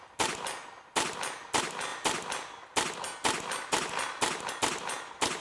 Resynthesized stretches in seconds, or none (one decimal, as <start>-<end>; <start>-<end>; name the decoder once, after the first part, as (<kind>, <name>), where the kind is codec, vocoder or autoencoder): none